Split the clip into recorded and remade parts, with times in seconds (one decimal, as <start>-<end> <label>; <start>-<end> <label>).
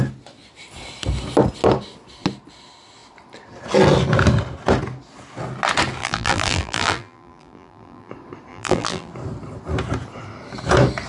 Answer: 0.0-6.0 recorded; 6.0-8.1 remade; 8.1-8.5 recorded; 8.5-9.1 remade; 9.1-11.1 recorded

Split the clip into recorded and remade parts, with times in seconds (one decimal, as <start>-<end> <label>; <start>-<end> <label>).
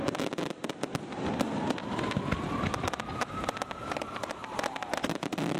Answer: 0.0-0.6 remade; 0.6-3.8 recorded; 3.8-4.4 remade; 4.4-5.0 recorded; 5.0-5.6 remade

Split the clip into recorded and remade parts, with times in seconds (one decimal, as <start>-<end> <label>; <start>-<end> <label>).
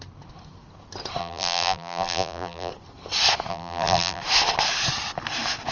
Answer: 0.0-1.2 recorded; 1.2-2.7 remade; 2.7-3.5 recorded; 3.5-4.2 remade; 4.2-5.7 recorded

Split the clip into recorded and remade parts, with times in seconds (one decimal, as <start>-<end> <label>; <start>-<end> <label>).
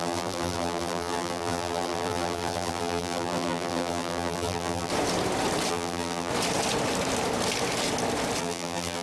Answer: 0.0-4.9 remade; 4.9-5.7 recorded; 5.7-6.3 remade; 6.3-8.4 recorded; 8.4-9.0 remade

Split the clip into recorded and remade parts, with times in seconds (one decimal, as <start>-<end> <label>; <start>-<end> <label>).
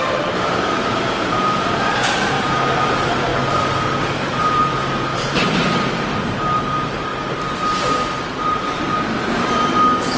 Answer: 0.0-3.3 remade; 3.3-4.0 recorded; 4.0-7.1 remade; 7.1-10.2 recorded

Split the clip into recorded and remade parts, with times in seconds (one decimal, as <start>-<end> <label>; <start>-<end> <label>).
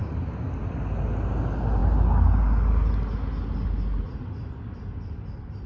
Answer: 0.0-5.7 recorded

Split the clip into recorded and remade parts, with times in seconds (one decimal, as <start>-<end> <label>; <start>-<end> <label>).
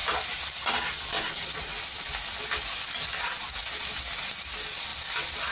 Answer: 0.0-3.2 remade; 3.2-3.6 recorded; 3.6-4.3 remade; 4.3-4.9 recorded; 4.9-5.5 remade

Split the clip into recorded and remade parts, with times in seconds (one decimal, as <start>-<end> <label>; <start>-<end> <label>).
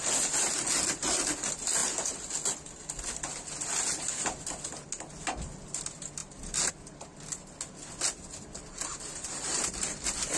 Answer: 0.0-8.9 recorded; 8.9-9.7 remade; 9.7-10.4 recorded